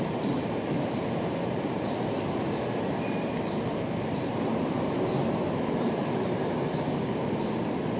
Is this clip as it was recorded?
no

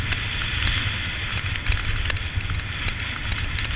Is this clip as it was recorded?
yes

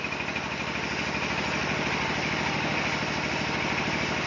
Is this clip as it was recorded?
yes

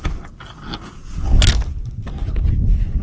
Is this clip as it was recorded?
yes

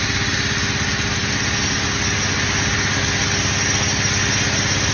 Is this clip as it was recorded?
yes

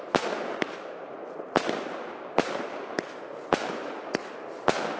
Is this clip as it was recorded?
yes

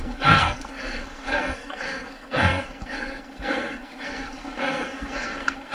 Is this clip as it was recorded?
no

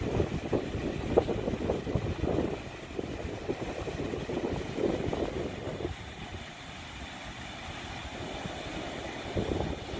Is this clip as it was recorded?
yes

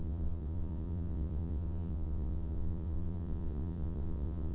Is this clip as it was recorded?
no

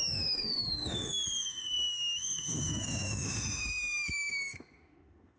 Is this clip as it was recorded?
no